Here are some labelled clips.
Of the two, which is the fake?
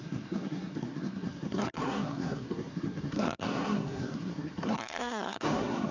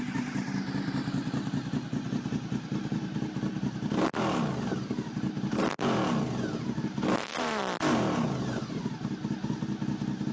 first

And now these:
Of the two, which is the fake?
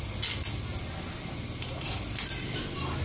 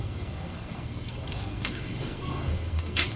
second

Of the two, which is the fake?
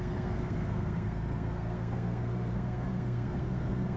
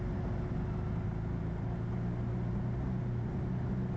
first